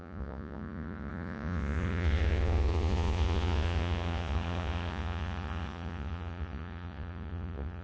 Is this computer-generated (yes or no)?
yes